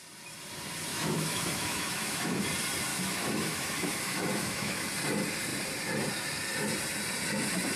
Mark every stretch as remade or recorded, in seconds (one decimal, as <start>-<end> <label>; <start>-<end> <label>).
0.0-0.9 recorded; 0.9-2.4 remade; 2.4-2.9 recorded; 2.9-4.9 remade; 4.9-7.8 recorded